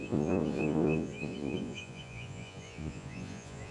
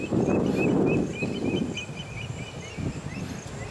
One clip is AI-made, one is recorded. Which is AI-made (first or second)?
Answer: first